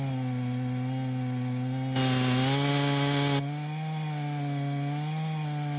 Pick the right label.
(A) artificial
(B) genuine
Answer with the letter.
B